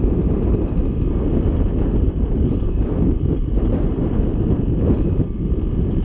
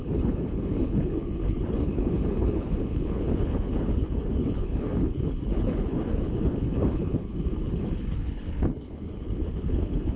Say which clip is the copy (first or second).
second